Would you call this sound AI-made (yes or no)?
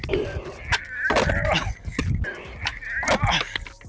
no